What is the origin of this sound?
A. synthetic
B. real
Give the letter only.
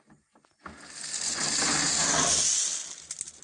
B